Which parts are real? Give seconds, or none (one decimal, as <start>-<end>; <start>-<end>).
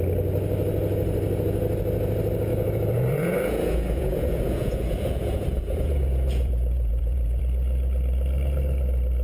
0.0-2.5; 7.4-9.2